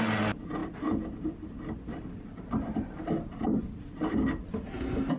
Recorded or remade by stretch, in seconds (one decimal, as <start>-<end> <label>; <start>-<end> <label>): 0.0-5.2 recorded